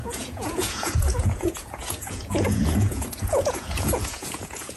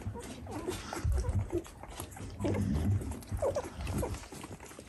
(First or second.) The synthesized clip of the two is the first